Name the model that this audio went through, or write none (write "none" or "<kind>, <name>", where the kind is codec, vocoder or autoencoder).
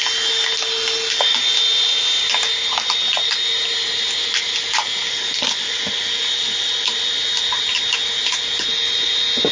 none